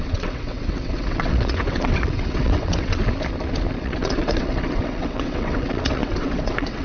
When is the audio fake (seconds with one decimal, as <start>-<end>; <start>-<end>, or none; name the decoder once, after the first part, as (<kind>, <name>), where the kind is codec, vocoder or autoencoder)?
0.0-3.0 (vocoder, WaveNeXt); 3.8-6.8